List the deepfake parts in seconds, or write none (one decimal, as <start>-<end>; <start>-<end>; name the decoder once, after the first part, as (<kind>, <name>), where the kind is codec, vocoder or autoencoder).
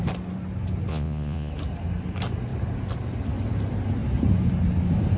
0.9-1.5 (vocoder, Vocos)